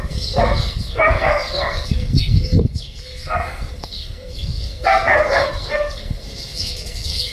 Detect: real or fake fake